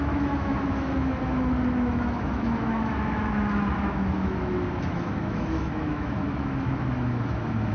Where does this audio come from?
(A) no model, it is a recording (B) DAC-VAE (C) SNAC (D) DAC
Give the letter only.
B